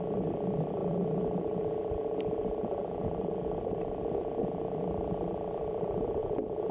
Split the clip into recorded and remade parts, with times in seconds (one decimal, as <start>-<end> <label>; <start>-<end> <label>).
0.0-6.7 recorded